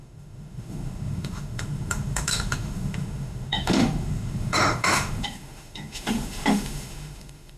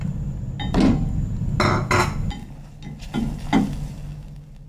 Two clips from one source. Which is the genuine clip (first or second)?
second